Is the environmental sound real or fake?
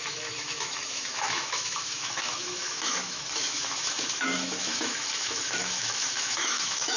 fake